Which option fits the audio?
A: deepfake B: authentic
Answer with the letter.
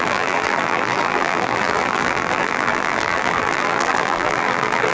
A